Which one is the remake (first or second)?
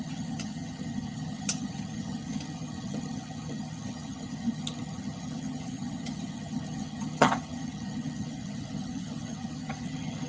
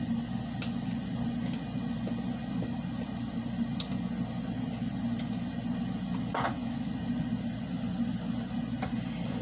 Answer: first